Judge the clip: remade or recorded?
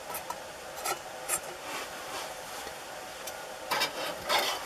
recorded